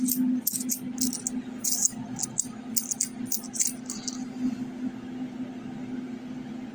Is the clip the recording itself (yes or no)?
yes